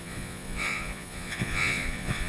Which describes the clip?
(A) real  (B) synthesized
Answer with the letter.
B